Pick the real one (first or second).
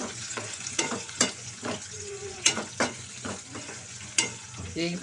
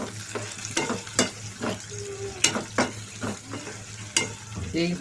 second